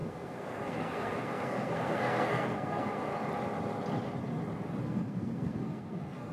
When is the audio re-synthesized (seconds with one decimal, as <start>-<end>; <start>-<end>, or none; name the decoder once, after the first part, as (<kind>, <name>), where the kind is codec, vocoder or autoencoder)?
0.0-3.1 (codec, SNAC); 4.8-6.3